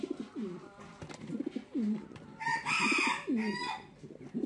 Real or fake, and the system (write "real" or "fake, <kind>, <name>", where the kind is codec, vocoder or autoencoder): real